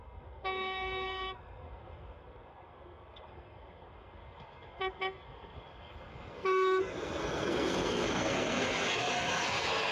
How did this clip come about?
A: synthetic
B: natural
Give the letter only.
A